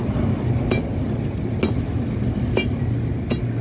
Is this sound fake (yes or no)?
no